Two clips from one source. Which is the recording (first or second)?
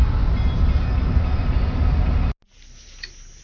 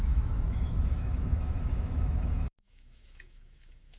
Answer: first